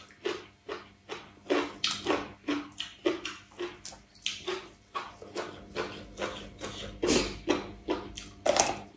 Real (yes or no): yes